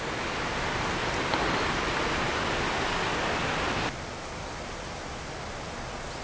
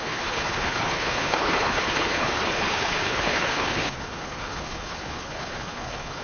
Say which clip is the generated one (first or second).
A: second